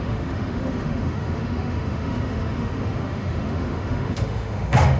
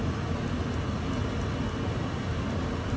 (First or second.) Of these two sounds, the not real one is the first